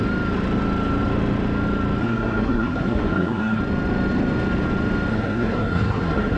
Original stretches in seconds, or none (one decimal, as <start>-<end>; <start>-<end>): 0.0-2.0; 3.6-5.1